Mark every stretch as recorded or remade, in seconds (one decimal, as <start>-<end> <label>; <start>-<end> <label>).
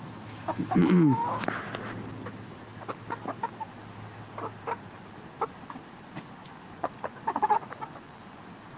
0.0-6.4 recorded; 6.4-8.4 remade; 8.4-8.8 recorded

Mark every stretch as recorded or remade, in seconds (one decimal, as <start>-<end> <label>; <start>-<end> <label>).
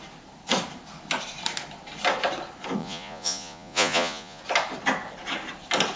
0.0-2.8 recorded; 2.8-4.4 remade; 4.4-6.0 recorded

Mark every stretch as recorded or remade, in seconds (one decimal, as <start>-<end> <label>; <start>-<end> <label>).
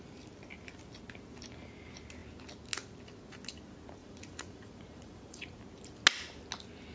0.0-4.0 recorded; 4.0-5.6 remade; 5.6-6.9 recorded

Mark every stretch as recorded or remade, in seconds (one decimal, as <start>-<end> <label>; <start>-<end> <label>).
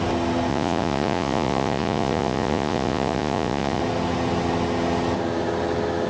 0.0-0.5 recorded; 0.5-3.8 remade; 3.8-6.1 recorded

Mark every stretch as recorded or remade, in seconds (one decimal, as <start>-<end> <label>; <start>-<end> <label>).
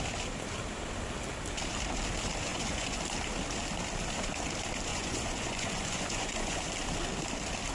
0.0-2.5 recorded; 2.5-3.0 remade; 3.0-4.9 recorded; 4.9-6.6 remade; 6.6-7.7 recorded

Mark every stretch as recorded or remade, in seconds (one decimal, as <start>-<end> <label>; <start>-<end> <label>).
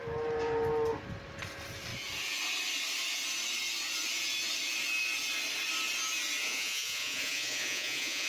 0.0-6.4 recorded; 6.4-8.3 remade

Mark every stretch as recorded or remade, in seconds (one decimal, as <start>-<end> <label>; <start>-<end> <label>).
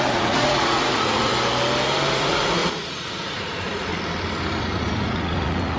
0.0-1.3 remade; 1.3-2.1 recorded; 2.1-3.9 remade; 3.9-4.6 recorded; 4.6-5.8 remade